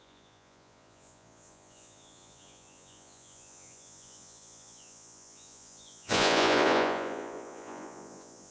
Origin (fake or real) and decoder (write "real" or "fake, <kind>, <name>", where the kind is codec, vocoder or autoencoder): fake, vocoder, Vocos